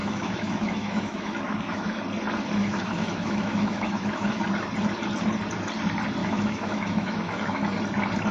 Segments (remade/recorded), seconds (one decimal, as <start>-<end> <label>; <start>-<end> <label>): 0.0-2.0 remade; 2.0-2.6 recorded; 2.6-4.4 remade; 4.4-6.2 recorded; 6.2-7.7 remade; 7.7-8.3 recorded